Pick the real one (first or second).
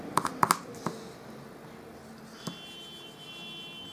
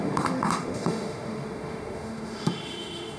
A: first